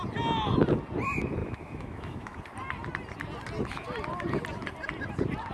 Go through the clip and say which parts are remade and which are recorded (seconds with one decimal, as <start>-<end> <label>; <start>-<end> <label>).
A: 0.0-1.4 recorded; 1.4-2.4 remade; 2.4-5.5 recorded